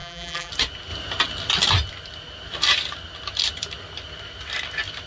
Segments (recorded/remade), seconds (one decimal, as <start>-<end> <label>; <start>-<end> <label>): 0.0-0.5 remade; 0.5-5.1 recorded

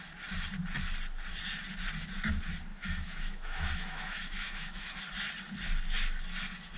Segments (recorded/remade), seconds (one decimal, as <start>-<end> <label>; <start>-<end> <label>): 0.0-2.7 recorded; 2.7-5.0 remade; 5.0-6.8 recorded

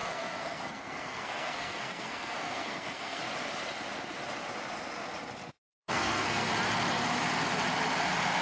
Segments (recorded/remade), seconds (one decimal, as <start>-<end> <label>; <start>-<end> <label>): 0.0-3.2 remade; 3.2-5.8 recorded; 5.8-6.5 remade; 6.5-8.4 recorded

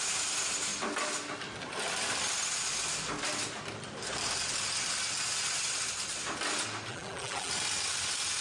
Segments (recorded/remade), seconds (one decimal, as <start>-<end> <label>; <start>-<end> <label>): 0.0-6.9 recorded; 6.9-7.5 remade; 7.5-8.4 recorded

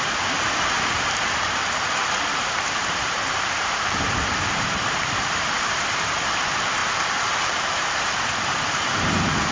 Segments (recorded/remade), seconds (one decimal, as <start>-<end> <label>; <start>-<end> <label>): 0.0-1.6 remade; 1.6-2.2 recorded; 2.2-9.5 remade